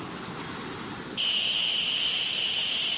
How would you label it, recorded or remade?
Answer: recorded